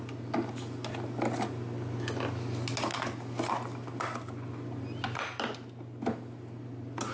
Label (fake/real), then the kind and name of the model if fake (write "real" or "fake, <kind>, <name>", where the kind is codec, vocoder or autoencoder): real